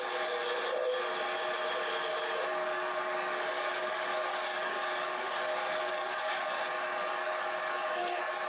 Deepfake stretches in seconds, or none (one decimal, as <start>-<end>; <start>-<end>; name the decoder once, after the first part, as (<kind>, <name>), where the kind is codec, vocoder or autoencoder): 0.0-0.4 (codec, DAC); 2.1-8.5